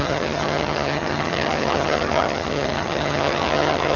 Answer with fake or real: fake